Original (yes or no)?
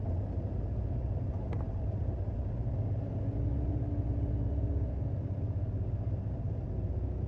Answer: yes